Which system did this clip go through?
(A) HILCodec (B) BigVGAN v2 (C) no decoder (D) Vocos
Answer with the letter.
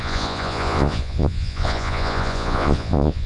D